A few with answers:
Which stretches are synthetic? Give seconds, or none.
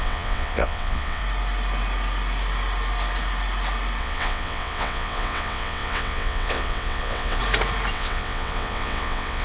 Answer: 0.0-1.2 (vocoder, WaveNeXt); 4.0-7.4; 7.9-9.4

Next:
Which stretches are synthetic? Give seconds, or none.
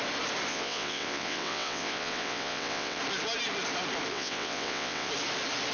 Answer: 0.5-3.0 (vocoder, WaveNeXt); 4.1-5.1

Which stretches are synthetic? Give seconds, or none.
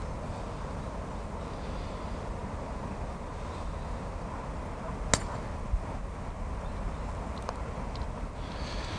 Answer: none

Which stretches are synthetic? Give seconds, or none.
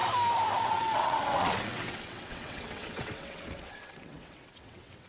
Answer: 0.6-5.1 (vocoder, WaveNeXt)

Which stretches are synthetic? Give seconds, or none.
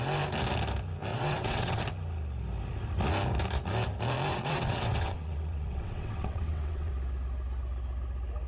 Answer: 1.1-1.8 (vocoder, WaveNeXt); 4.3-6.9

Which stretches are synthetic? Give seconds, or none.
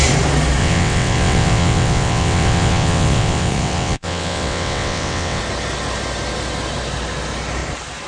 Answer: 0.6-5.4 (vocoder, WaveNeXt)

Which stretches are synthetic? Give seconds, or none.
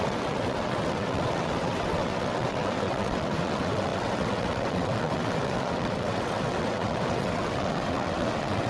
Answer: 0.0-8.7 (vocoder, WaveNeXt)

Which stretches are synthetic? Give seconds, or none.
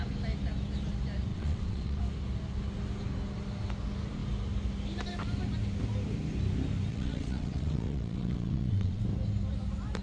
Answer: 1.3-2.0 (vocoder, WaveNeXt); 6.9-9.0